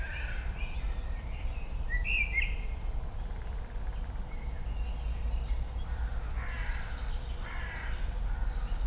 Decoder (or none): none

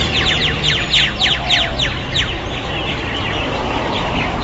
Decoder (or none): none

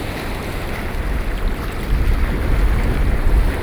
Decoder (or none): none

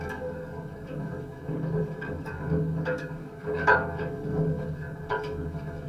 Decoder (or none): codec, DAC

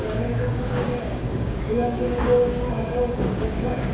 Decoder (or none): codec, DAC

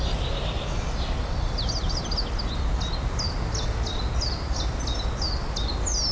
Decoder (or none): none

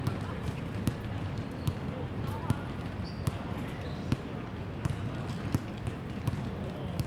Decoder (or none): none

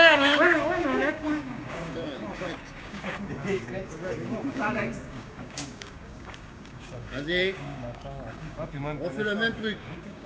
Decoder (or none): codec, DAC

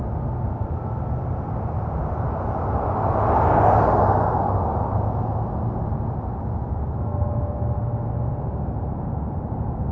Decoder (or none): none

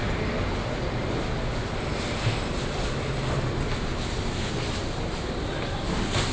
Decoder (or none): none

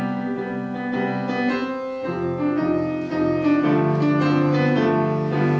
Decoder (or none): none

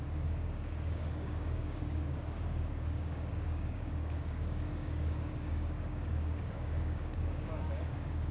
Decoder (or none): codec, DAC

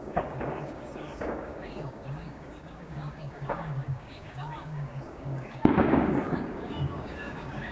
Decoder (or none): codec, DAC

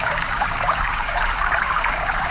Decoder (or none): codec, DAC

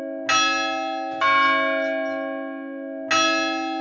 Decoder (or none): none